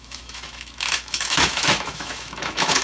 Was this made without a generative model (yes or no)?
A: no